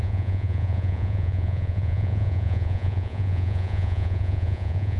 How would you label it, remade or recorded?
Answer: remade